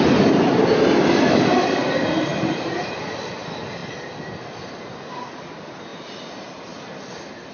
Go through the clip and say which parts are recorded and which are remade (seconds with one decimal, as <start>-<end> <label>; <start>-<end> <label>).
0.0-2.3 recorded; 2.3-2.8 remade; 2.8-7.5 recorded